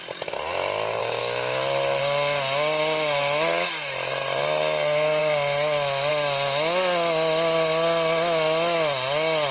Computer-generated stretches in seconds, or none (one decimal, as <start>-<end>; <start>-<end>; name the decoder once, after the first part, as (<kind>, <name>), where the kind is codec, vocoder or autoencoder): 1.0-2.0 (autoencoder, DAC-VAE)